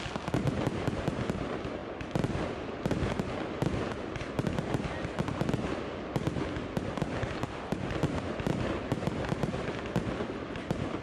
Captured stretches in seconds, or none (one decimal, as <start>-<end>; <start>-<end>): 0.0-11.0